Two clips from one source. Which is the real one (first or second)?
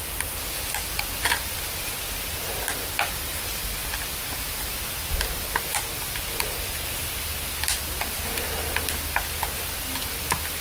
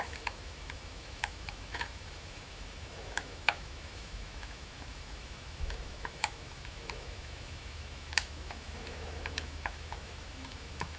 first